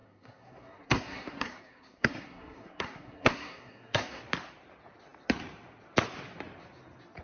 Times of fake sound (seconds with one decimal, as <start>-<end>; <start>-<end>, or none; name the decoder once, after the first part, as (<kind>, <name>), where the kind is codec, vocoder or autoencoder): 0.0-4.2 (codec, SNAC)